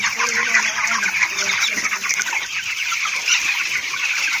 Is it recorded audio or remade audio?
remade